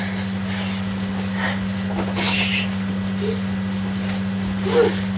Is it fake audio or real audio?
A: real